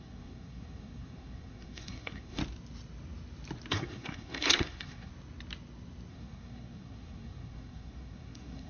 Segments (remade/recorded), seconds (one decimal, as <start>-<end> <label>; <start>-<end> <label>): 0.0-2.4 remade; 2.4-3.7 recorded; 3.7-5.1 remade; 5.1-6.1 recorded; 6.1-8.7 remade